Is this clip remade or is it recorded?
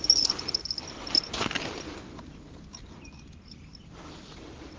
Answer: recorded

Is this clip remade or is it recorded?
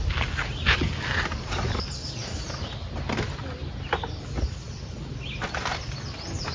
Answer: recorded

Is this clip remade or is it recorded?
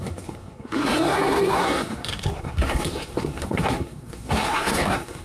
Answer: remade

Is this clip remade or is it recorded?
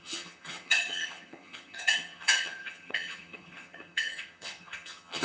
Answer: remade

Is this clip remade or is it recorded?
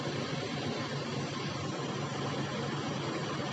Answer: recorded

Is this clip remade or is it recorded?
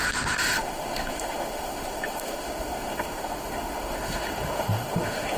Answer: remade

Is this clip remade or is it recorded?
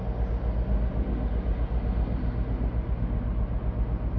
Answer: recorded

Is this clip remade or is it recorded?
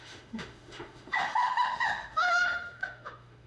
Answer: remade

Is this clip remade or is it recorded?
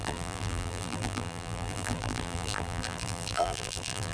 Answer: remade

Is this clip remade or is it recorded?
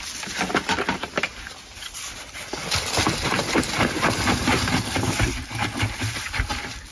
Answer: recorded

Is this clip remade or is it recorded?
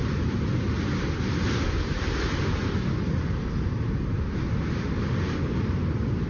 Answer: recorded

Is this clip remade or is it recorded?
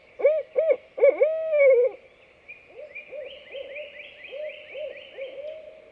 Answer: recorded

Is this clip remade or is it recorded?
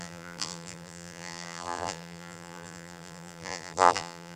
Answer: remade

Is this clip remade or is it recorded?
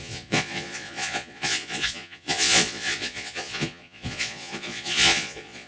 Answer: remade